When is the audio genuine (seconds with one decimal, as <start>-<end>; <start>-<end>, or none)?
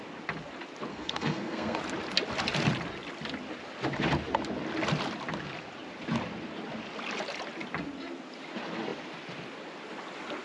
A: 0.0-0.9; 1.8-10.4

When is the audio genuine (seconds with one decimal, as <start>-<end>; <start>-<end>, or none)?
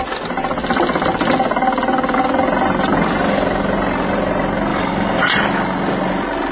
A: 0.0-4.7; 5.2-6.5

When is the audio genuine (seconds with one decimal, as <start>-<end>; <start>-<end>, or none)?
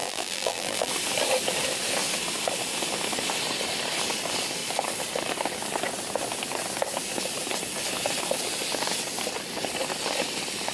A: 0.9-10.7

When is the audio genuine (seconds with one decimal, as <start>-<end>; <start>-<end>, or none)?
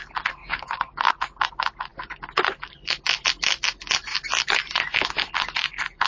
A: 0.0-0.4; 1.1-6.1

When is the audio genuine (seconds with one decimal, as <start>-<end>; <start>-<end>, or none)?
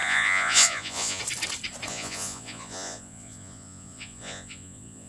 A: 1.2-1.9